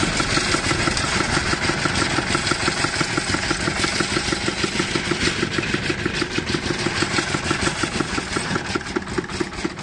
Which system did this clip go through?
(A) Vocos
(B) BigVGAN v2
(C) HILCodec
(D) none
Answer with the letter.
D